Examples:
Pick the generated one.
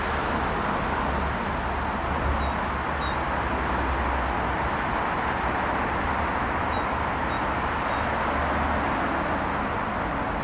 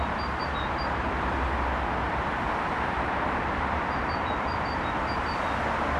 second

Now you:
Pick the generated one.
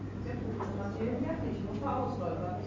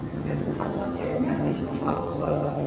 second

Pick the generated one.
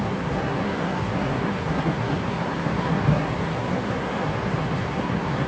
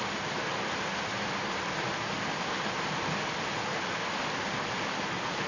first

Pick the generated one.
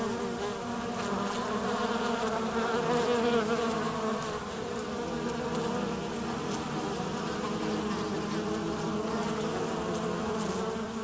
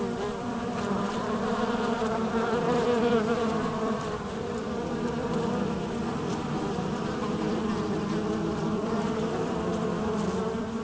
second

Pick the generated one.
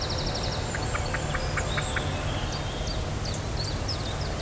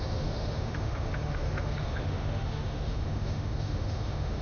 second